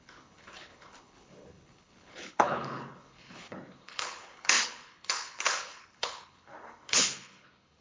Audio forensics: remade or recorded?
remade